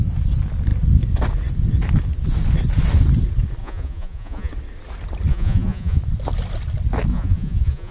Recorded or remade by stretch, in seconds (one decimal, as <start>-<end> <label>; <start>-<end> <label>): 0.0-3.6 recorded; 3.6-4.5 remade; 4.5-5.3 recorded; 5.3-6.0 remade; 6.0-7.1 recorded; 7.1-7.9 remade